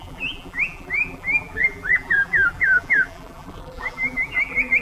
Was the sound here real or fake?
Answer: fake